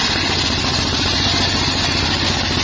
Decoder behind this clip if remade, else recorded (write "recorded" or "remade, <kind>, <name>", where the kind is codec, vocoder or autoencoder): recorded